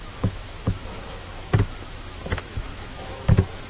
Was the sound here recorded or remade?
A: remade